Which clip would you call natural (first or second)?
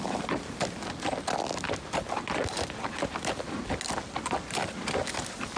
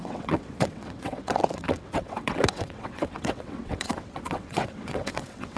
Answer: first